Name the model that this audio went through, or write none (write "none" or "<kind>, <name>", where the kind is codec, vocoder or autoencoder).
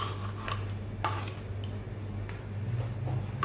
none